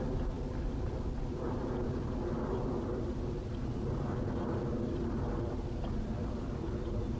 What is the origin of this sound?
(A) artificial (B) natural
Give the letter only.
B